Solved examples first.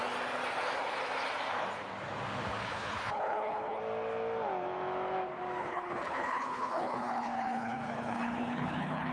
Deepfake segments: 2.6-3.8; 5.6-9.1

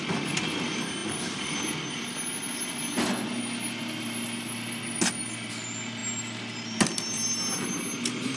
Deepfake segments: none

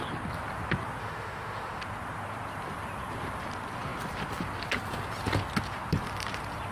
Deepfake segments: 1.0-1.8

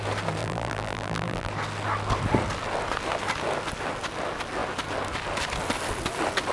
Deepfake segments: 0.4-1.5

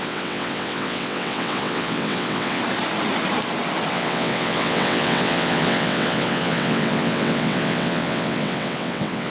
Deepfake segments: 0.0-2.6; 3.9-9.3